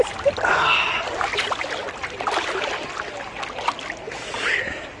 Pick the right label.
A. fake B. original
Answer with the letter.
B